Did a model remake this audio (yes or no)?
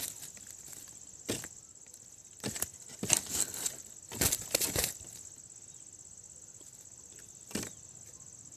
no